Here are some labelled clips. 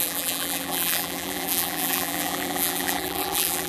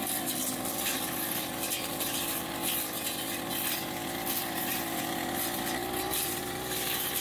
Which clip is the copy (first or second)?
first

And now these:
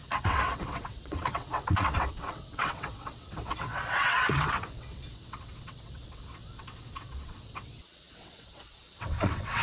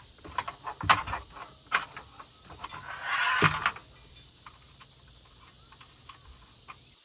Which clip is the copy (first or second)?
first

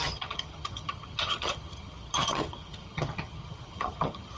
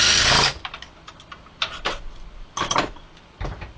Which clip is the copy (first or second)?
first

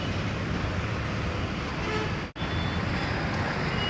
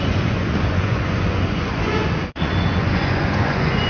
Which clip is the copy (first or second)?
second